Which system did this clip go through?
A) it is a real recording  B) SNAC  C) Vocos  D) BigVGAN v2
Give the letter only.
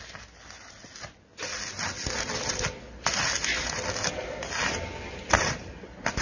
A